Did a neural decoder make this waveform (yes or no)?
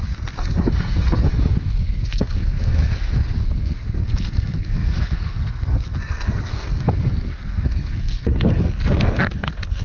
yes